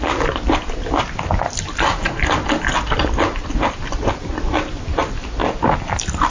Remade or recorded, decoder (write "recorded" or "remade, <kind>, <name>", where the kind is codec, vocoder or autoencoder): recorded